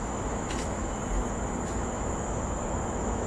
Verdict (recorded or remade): remade